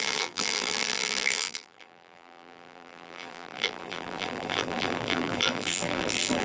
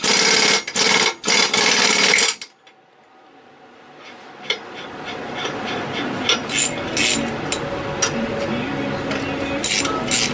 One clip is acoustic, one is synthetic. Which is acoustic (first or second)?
second